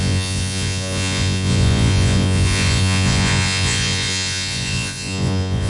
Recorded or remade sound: remade